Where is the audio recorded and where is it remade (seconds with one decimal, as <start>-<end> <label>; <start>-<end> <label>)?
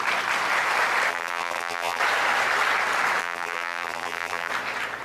0.0-1.1 recorded; 1.1-2.0 remade; 2.0-3.2 recorded; 3.2-4.5 remade; 4.5-5.0 recorded